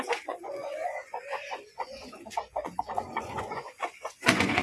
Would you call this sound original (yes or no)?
no